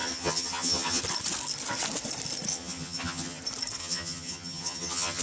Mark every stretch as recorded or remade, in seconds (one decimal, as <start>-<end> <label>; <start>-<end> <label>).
0.0-1.0 remade; 1.0-2.5 recorded; 2.5-3.4 remade; 3.4-3.8 recorded; 3.8-5.2 remade